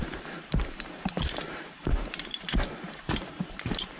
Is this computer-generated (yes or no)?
yes